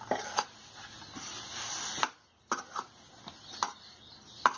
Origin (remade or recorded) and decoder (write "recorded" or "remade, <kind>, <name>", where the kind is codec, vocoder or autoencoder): recorded